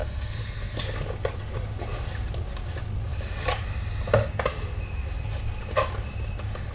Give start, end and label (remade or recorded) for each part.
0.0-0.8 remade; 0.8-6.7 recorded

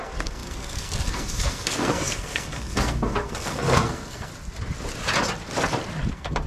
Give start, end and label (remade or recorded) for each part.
0.0-4.3 remade; 4.3-6.1 recorded; 6.1-6.5 remade